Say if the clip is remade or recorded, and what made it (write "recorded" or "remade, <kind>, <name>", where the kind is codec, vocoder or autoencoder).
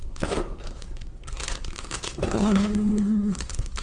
remade, codec, SNAC